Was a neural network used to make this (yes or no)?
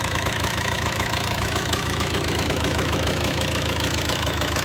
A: yes